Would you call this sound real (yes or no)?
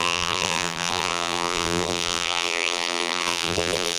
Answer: no